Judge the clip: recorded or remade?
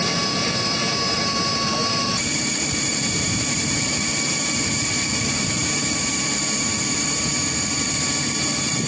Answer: remade